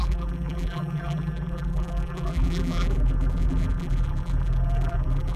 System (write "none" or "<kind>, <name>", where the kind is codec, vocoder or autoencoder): vocoder, BigVGAN v2